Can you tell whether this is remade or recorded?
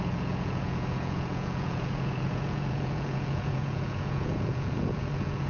remade